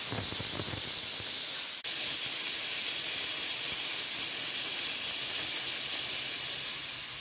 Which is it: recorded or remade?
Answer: recorded